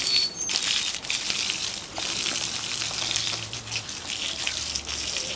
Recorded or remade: remade